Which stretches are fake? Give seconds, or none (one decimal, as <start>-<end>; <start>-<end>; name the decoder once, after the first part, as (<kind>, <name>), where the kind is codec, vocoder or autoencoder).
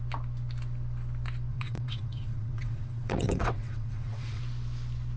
1.5-4.4 (vocoder, WaveNeXt)